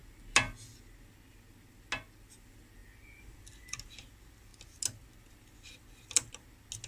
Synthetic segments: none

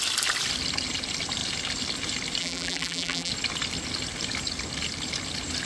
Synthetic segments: 2.4-3.3 (vocoder, BigVGAN v2)